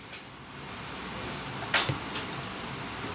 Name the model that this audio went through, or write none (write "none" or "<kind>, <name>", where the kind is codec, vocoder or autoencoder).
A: vocoder, BigVGAN v2